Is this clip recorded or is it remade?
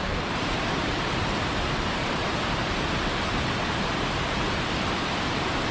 remade